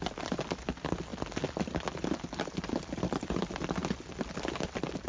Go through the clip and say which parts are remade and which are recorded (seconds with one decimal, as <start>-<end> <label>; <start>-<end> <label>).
0.0-1.1 remade; 1.1-2.4 recorded; 2.4-5.1 remade